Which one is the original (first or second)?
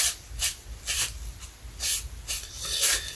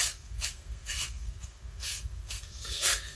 first